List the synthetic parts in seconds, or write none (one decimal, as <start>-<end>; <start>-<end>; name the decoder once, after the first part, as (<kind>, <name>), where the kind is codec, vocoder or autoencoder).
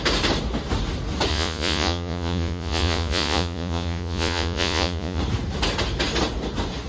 1.3-5.2 (vocoder, Vocos)